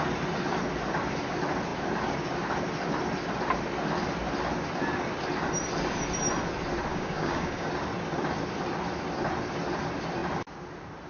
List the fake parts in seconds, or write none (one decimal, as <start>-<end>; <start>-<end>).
6.9-7.7